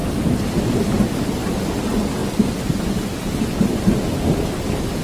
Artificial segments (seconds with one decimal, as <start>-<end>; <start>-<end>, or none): 2.2-4.5